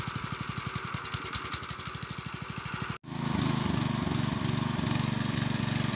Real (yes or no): yes